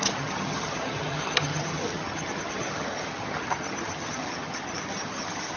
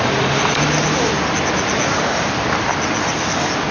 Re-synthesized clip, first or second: first